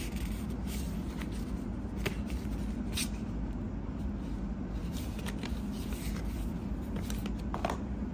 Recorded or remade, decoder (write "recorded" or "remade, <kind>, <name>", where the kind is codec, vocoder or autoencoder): recorded